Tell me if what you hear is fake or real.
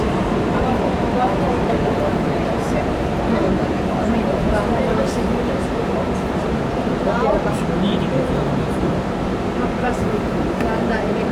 fake